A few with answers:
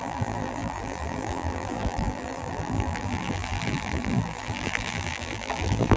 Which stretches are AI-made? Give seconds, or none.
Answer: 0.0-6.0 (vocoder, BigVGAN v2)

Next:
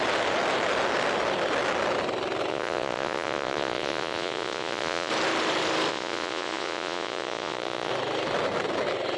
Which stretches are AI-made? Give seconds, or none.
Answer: 2.5-5.1 (vocoder, Vocos); 5.9-7.9

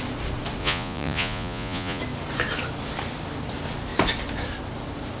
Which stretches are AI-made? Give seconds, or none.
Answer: 0.6-2.0 (vocoder, Vocos)